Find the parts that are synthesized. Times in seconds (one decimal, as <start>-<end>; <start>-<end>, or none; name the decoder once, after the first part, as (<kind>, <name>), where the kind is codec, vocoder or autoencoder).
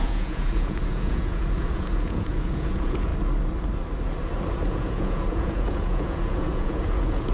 0.0-3.1 (vocoder, Vocos); 4.5-7.3